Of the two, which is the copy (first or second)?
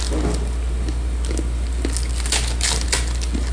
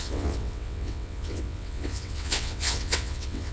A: second